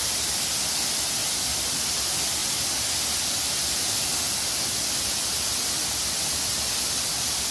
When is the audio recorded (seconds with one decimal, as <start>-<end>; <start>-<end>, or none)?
0.0-7.5